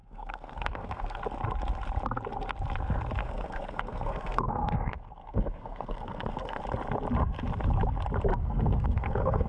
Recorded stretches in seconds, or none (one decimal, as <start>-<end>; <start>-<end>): 1.2-3.2; 6.6-8.3

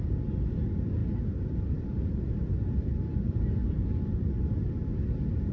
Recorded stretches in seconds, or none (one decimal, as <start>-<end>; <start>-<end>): 0.0-1.0; 4.3-5.5

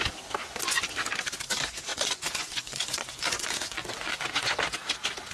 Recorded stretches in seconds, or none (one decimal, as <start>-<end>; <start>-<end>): 0.0-1.9; 4.6-5.3